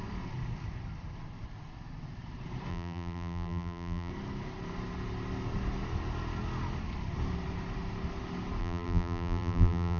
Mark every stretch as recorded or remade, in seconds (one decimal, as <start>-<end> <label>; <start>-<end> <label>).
0.0-2.7 recorded; 2.7-4.1 remade; 4.1-8.6 recorded; 8.6-10.0 remade